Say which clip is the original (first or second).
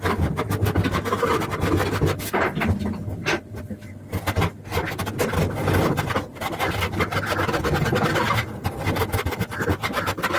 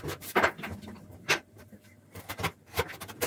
first